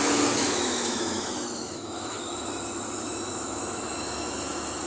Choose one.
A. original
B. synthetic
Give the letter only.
B